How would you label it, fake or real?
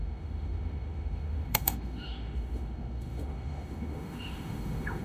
fake